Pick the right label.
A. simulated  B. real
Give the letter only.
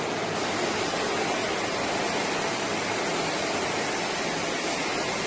B